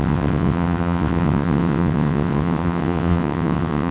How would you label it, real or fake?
fake